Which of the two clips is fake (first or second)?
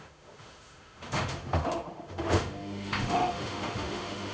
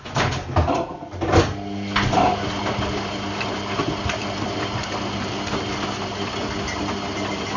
first